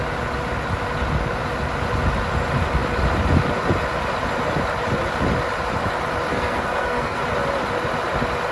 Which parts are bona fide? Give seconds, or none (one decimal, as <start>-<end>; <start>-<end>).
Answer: 0.0-6.3; 7.2-8.5